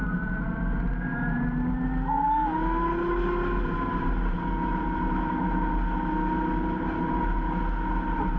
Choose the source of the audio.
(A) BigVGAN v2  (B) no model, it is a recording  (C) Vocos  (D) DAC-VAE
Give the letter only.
B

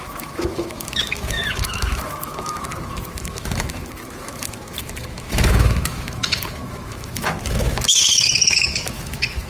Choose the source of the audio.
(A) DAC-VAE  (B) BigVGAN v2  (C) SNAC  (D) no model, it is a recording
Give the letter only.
A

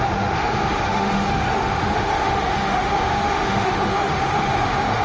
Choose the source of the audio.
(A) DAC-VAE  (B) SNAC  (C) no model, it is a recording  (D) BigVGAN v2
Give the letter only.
A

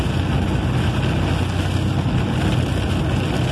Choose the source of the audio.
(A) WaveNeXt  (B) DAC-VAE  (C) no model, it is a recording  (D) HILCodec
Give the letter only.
C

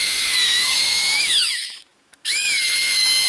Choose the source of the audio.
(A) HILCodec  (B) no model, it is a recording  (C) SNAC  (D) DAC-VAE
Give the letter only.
D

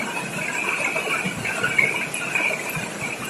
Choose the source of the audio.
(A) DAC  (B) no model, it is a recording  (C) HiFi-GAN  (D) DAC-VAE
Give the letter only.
B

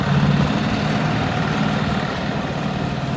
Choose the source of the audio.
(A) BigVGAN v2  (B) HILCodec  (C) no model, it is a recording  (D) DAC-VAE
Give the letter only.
C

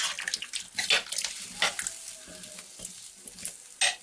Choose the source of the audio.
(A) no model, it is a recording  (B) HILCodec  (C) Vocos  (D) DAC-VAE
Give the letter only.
A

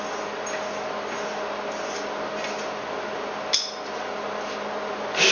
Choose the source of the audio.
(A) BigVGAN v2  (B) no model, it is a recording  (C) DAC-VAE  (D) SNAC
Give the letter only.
B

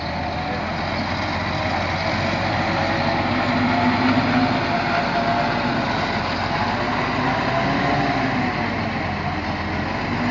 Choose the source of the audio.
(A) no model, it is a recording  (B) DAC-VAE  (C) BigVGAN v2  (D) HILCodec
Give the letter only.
A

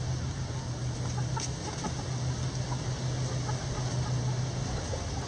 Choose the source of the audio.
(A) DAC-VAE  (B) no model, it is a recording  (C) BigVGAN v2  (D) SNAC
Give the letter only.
B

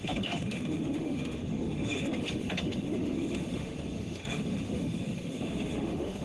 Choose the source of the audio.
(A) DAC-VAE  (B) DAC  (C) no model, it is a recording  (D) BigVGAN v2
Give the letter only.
A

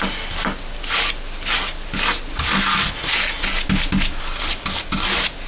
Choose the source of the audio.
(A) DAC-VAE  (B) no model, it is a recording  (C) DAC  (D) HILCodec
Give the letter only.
B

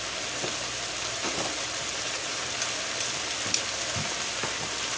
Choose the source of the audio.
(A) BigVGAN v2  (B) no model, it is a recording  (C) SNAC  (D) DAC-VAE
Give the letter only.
B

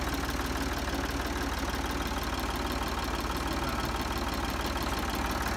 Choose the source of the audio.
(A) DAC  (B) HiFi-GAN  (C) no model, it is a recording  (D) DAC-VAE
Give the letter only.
C